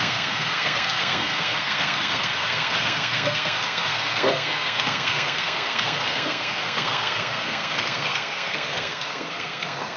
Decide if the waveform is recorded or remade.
remade